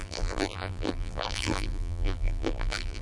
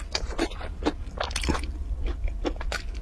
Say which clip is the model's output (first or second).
first